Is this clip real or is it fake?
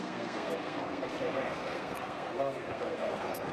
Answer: fake